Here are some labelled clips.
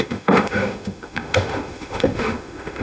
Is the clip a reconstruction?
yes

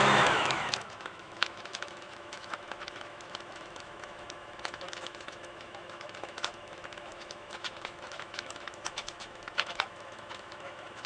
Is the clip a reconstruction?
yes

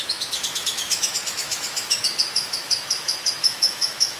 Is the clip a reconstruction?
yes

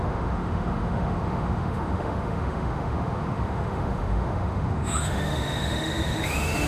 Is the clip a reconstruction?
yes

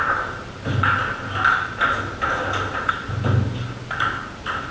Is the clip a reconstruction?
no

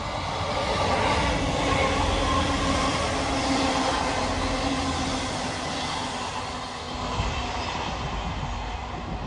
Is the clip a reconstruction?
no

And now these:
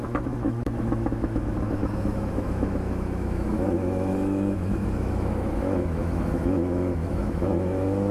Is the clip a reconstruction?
yes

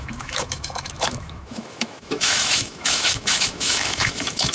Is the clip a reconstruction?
yes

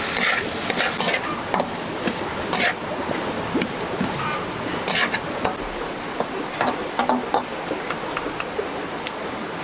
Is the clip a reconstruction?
no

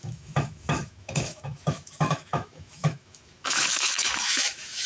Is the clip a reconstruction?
yes